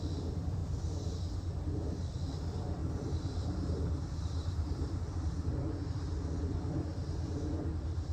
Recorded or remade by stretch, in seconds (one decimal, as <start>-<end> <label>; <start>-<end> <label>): 0.0-2.8 recorded; 2.8-5.5 remade; 5.5-8.1 recorded